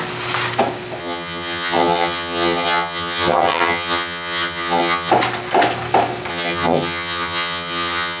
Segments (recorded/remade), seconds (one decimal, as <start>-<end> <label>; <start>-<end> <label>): 0.0-1.0 recorded; 1.0-5.1 remade; 5.1-6.3 recorded; 6.3-8.2 remade